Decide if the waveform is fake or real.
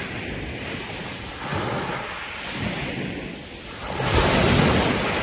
real